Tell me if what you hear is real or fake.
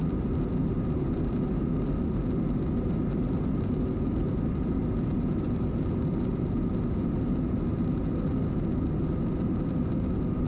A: real